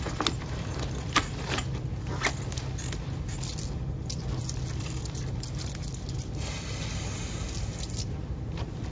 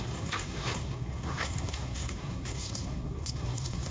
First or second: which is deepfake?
second